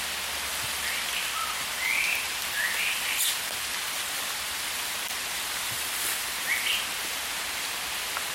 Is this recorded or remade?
recorded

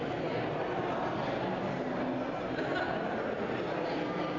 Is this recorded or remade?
recorded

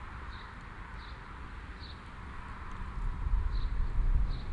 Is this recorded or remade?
recorded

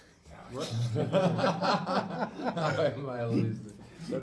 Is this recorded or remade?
remade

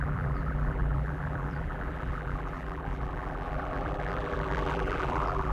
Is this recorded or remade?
remade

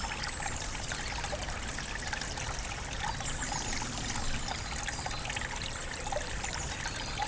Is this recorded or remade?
recorded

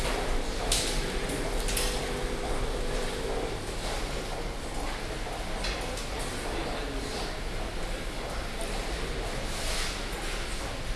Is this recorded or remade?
recorded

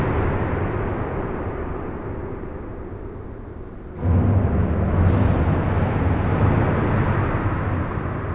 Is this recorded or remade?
recorded